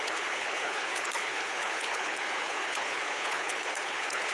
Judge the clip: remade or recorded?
remade